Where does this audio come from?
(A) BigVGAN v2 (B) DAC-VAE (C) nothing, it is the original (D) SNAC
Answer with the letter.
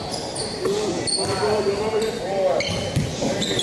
C